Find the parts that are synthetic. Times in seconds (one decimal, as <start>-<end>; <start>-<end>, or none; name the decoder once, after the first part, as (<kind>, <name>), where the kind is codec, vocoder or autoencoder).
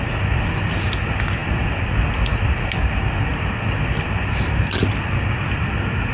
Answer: 1.4-2.6 (vocoder, BigVGAN v2); 3.3-6.1